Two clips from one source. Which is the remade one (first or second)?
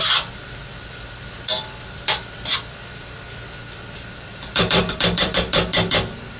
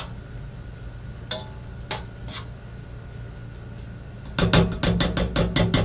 first